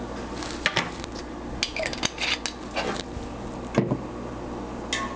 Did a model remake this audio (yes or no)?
no